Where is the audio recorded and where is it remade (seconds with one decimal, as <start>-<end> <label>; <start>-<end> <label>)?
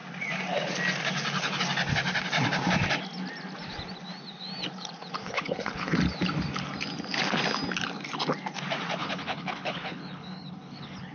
0.0-5.2 recorded; 5.2-6.0 remade; 6.0-9.0 recorded; 9.0-11.1 remade